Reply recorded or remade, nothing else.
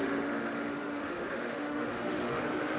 remade